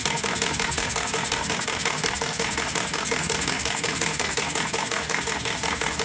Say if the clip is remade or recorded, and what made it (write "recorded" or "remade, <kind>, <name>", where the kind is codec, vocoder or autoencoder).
remade, codec, DAC